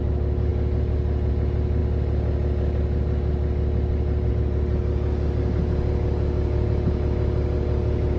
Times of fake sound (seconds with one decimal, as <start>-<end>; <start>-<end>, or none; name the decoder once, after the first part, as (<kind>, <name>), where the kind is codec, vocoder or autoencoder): none